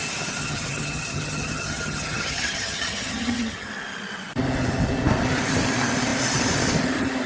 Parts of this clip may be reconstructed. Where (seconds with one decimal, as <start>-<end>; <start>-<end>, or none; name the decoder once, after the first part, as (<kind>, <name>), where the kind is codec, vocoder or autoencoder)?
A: 0.4-3.7 (vocoder, HiFi-GAN)